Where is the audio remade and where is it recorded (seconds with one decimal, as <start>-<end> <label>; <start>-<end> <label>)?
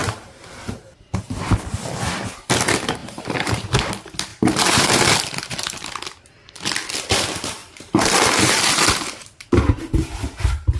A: 0.0-0.9 remade; 0.9-3.0 recorded; 3.0-3.8 remade; 3.8-4.3 recorded; 4.3-5.1 remade; 5.1-7.6 recorded; 7.6-9.8 remade; 9.8-10.8 recorded